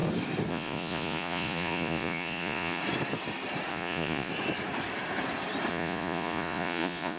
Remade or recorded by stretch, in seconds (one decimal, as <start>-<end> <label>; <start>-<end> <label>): 0.0-0.5 recorded; 0.5-2.8 remade; 2.8-3.7 recorded; 3.7-4.3 remade; 4.3-5.7 recorded; 5.7-7.2 remade